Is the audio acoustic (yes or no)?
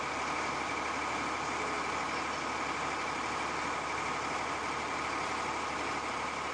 yes